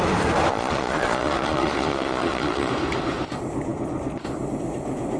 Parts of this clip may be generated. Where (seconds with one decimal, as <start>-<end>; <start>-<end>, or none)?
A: 0.5-2.7